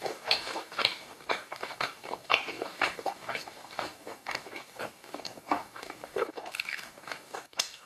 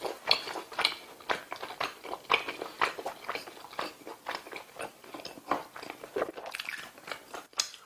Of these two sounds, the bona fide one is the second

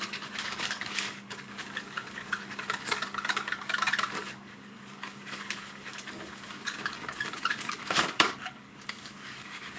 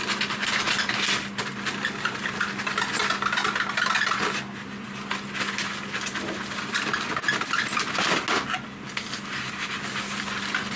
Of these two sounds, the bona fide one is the second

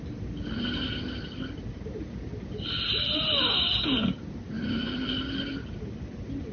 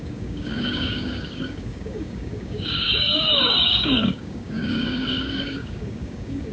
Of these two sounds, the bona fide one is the first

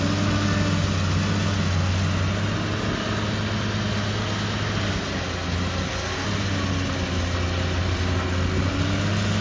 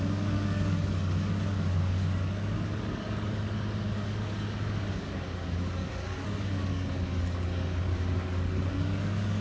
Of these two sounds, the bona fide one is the first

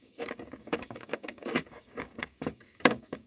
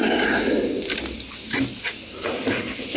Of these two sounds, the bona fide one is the second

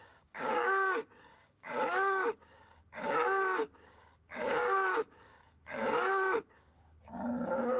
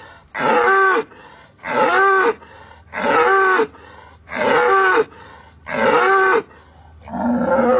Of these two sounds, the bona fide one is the second